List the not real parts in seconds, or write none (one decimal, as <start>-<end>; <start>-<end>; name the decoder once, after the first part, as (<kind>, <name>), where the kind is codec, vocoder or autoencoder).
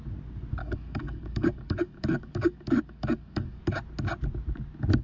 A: 0.6-3.6 (codec, DAC)